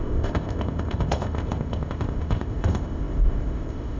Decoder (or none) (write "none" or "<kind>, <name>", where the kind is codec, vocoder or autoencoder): codec, ZipCodec